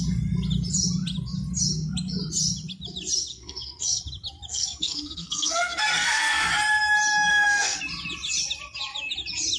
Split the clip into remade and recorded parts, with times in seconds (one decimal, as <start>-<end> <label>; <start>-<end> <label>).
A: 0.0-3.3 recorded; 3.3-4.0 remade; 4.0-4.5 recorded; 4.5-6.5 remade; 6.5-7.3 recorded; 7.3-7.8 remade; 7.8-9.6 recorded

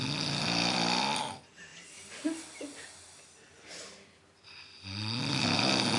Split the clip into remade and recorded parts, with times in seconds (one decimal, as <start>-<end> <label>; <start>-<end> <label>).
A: 0.0-6.0 recorded

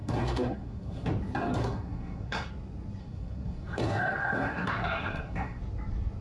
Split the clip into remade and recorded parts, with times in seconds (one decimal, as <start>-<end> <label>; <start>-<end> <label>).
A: 0.0-1.1 remade; 1.1-1.6 recorded; 1.6-2.5 remade; 2.5-3.0 recorded; 3.0-5.6 remade; 5.6-6.2 recorded

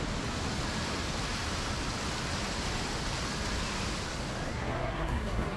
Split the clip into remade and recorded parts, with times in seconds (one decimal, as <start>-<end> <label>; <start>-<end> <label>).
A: 0.0-4.5 recorded; 4.5-5.6 remade

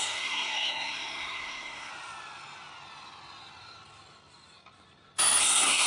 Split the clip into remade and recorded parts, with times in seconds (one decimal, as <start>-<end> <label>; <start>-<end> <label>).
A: 0.0-1.9 remade; 1.9-5.4 recorded; 5.4-5.9 remade

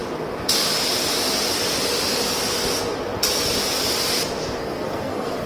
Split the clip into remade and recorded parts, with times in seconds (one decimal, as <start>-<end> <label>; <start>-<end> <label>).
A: 0.0-4.6 recorded; 4.6-5.5 remade

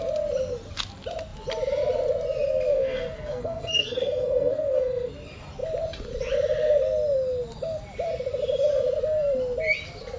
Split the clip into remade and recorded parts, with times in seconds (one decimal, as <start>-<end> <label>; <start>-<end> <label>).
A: 0.0-2.7 recorded; 2.7-5.1 remade; 5.1-10.2 recorded

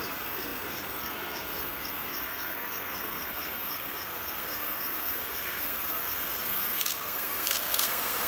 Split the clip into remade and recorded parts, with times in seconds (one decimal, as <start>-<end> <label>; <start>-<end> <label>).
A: 0.0-8.3 remade